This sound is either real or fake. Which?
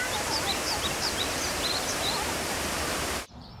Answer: fake